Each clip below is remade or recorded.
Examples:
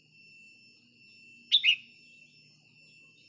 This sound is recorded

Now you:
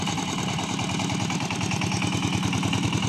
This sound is recorded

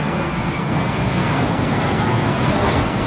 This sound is remade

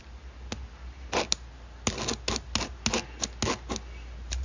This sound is recorded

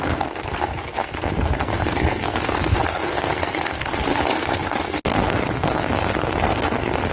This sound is remade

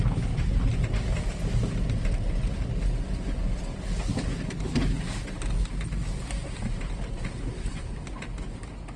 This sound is recorded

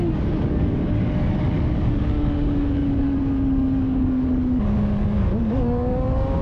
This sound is remade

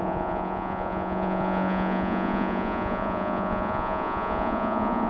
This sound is remade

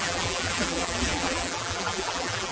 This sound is remade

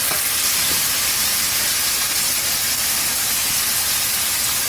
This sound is recorded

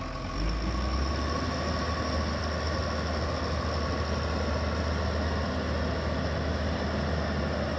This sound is recorded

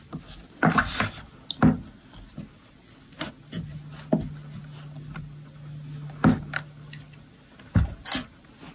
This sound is recorded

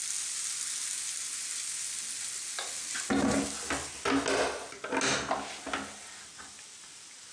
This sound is recorded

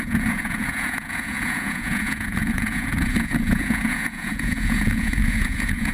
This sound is remade